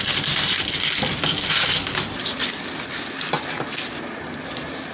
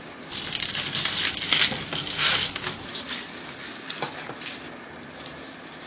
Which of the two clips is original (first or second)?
second